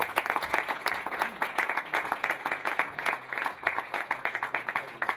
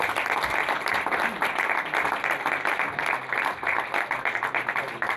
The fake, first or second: first